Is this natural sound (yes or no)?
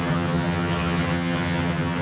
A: no